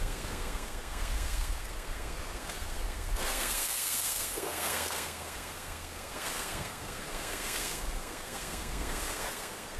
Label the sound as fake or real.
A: fake